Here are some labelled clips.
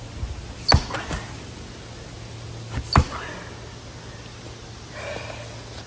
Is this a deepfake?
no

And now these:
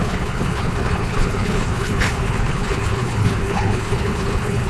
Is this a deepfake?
yes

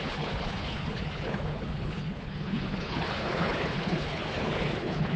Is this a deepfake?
yes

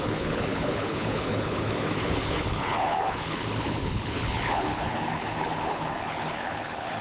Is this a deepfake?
yes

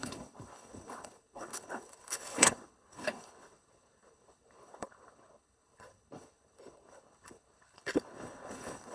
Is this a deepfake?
yes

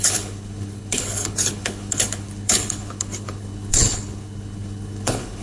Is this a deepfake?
yes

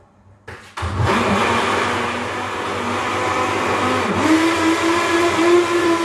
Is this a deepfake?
no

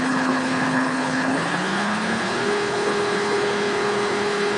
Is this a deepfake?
yes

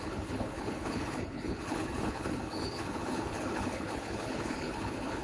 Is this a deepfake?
yes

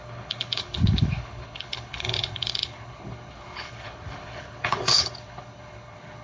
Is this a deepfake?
yes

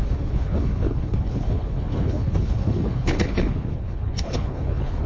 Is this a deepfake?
yes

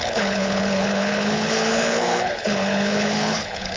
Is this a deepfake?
yes